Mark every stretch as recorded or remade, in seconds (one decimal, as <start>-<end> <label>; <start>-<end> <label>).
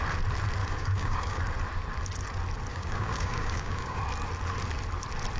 0.0-0.6 recorded; 0.6-1.4 remade; 1.4-2.7 recorded; 2.7-4.0 remade; 4.0-5.4 recorded